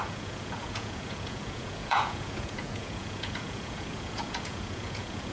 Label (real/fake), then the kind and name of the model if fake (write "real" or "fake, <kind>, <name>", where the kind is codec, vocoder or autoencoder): fake, vocoder, Vocos